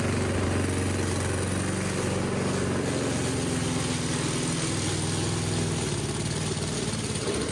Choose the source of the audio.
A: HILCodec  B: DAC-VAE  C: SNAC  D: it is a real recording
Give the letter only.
D